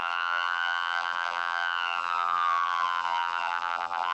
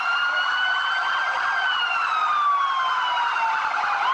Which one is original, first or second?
second